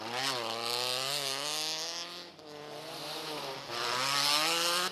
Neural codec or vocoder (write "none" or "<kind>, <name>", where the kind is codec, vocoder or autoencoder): none